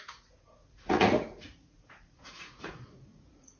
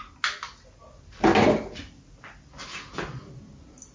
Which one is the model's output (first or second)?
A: first